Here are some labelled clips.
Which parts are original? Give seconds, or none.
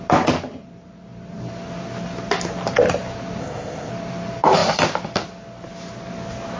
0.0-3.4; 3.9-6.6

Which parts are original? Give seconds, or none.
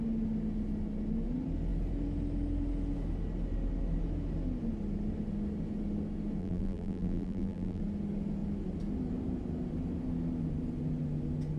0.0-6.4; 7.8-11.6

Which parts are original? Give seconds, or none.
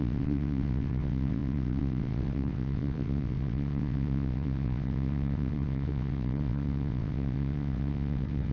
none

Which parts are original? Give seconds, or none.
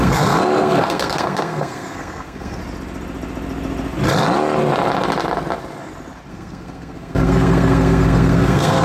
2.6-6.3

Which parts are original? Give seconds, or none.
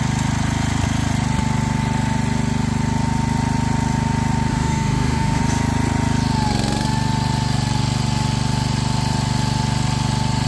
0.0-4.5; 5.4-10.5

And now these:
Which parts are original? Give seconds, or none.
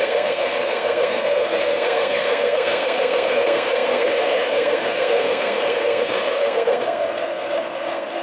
none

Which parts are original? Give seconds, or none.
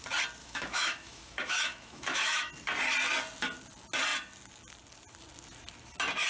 0.0-0.4; 2.5-6.3